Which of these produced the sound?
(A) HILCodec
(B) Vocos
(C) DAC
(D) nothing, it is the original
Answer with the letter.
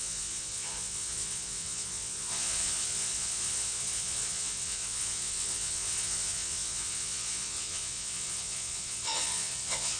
B